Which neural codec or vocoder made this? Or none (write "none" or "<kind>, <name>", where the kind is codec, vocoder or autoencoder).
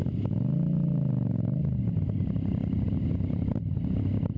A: none